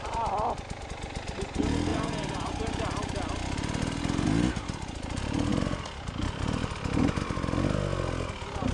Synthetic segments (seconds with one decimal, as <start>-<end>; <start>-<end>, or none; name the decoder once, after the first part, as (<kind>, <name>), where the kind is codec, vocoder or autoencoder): 1.9-2.6 (vocoder, Vocos)